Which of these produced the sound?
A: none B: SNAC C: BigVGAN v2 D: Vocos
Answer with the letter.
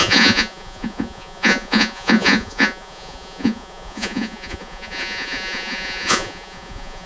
D